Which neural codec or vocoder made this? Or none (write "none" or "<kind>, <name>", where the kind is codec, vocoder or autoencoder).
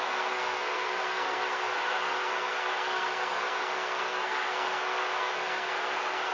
codec, SNAC